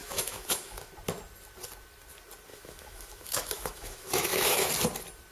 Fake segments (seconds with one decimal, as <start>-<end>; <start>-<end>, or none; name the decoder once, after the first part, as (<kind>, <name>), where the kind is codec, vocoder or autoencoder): 0.0-0.9 (autoencoder, DAC-VAE); 2.5-4.7